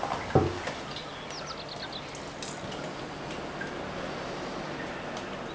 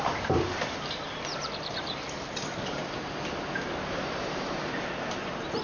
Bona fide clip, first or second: first